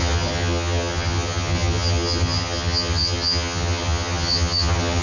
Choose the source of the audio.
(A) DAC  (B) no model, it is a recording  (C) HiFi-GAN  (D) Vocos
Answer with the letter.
C